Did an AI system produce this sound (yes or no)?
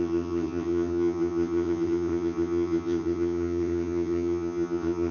yes